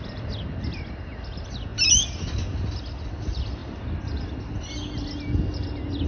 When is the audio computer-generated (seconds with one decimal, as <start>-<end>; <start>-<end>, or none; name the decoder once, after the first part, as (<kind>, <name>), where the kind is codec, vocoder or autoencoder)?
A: none